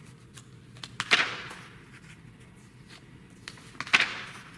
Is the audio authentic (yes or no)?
yes